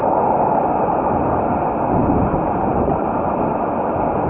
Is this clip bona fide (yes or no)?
yes